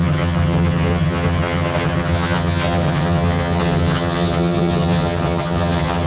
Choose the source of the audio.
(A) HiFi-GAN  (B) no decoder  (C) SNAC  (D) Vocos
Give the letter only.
A